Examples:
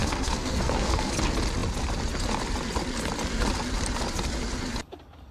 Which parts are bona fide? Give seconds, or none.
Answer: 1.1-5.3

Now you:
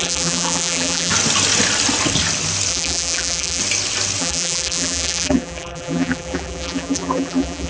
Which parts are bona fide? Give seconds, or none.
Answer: 1.1-2.7; 3.6-4.2

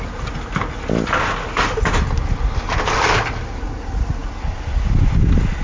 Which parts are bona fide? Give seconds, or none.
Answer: 0.0-5.6

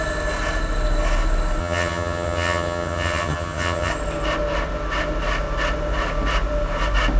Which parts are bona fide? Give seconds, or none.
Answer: 0.0-1.6; 3.9-7.2